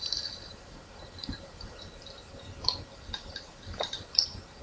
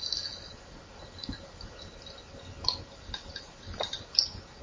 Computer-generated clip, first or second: first